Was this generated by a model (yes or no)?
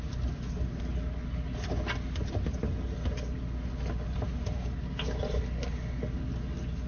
no